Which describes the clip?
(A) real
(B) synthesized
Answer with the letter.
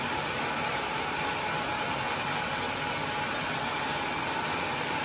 A